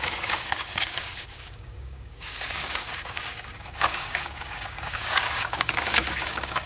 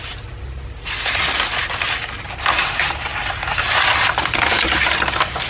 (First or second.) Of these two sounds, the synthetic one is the first